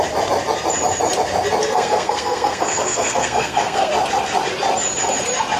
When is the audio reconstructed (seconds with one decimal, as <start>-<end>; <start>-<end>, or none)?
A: 1.7-3.9